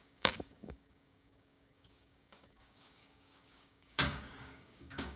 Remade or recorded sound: remade